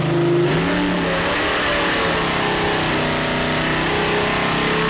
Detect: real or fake real